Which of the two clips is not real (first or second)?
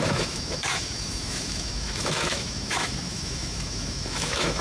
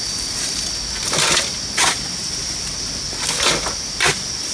first